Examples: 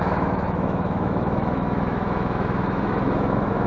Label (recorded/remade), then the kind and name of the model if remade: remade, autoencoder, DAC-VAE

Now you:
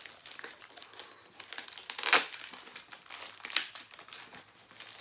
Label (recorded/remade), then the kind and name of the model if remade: recorded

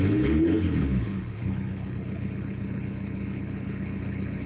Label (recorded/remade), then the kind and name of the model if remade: remade, codec, HILCodec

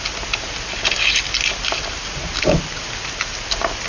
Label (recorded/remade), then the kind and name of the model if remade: recorded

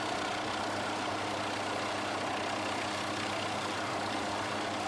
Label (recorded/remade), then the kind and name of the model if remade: recorded